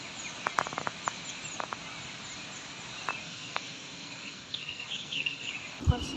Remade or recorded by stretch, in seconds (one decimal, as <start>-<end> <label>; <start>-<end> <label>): 0.0-3.2 recorded; 3.2-5.5 remade; 5.5-6.2 recorded